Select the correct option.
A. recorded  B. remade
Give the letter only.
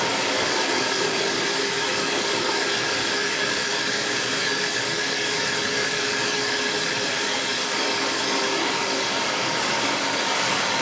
B